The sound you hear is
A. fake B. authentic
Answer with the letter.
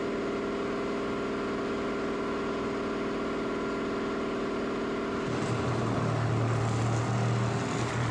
B